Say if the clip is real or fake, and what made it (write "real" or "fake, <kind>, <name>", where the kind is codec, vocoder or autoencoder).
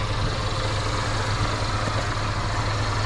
real